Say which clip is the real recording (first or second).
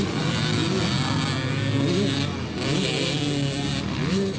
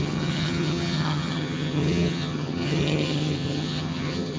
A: first